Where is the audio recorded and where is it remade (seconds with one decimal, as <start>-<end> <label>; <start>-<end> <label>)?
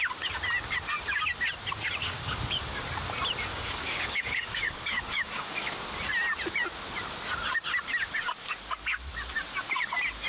0.0-2.0 recorded; 2.0-2.8 remade; 2.8-3.5 recorded; 3.5-5.7 remade; 5.7-10.3 recorded